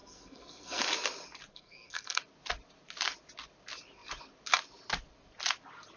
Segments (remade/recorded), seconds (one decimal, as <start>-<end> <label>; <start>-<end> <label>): 0.0-0.8 remade; 0.8-1.5 recorded; 1.5-2.2 remade; 2.2-6.0 recorded